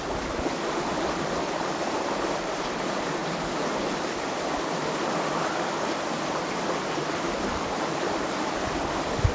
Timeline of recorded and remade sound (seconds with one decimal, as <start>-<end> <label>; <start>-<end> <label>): 0.0-9.3 recorded